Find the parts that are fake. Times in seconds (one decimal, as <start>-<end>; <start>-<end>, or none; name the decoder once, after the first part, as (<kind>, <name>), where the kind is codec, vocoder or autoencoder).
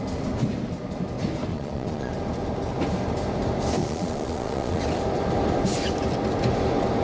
1.5-2.1 (vocoder, Vocos); 3.8-4.8